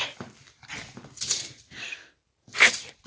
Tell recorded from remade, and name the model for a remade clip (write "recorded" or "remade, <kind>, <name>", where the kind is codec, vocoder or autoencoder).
recorded